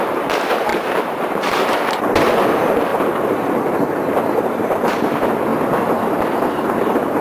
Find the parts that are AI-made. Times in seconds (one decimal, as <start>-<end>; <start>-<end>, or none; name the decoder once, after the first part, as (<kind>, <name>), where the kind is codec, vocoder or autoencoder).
0.7-2.1 (vocoder, BigVGAN v2); 2.9-4.9